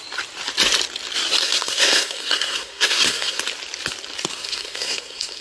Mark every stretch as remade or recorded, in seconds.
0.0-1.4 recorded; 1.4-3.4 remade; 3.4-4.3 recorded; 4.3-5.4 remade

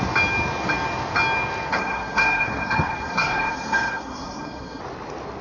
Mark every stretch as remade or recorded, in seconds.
0.0-1.7 recorded; 1.7-4.8 remade; 4.8-5.4 recorded

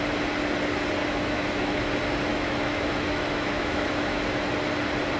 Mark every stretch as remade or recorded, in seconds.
0.0-1.0 recorded; 1.0-1.9 remade; 1.9-2.3 recorded; 2.3-4.2 remade; 4.2-5.2 recorded

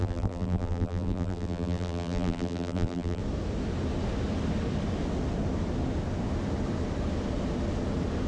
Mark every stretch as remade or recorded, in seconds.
0.0-3.2 remade; 3.2-8.3 recorded

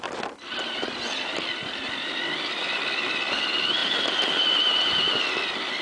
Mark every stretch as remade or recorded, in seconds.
0.0-5.8 remade